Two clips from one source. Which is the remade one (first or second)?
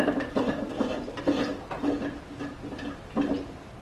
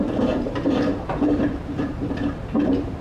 second